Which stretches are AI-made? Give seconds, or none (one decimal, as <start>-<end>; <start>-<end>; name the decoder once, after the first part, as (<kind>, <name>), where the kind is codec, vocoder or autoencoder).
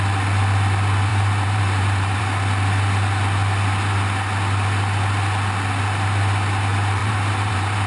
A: 1.1-2.2 (vocoder, BigVGAN v2); 7.0-7.9